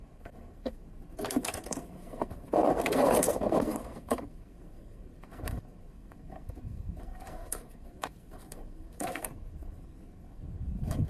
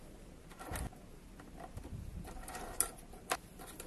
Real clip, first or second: second